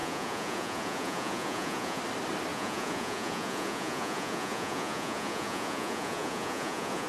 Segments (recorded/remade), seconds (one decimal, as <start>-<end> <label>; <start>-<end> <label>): 0.0-2.0 remade; 2.0-2.5 recorded; 2.5-7.1 remade